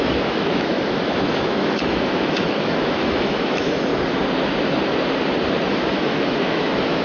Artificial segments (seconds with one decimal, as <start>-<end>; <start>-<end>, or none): 0.0-3.9; 5.7-7.0